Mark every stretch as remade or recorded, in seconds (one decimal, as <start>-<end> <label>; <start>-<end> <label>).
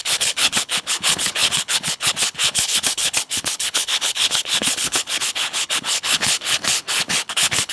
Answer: 0.0-7.7 remade